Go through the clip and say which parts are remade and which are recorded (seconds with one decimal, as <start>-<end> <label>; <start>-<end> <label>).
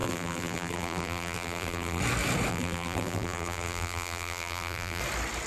0.0-2.0 remade; 2.0-2.5 recorded; 2.5-5.0 remade; 5.0-5.5 recorded